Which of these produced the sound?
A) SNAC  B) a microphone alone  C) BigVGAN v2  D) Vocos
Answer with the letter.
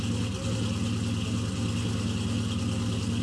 B